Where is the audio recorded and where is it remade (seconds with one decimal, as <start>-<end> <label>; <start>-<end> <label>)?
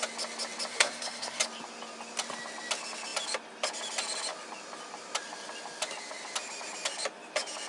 0.0-0.7 recorded; 0.7-1.4 remade; 1.4-7.7 recorded